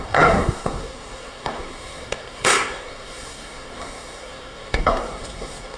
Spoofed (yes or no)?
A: yes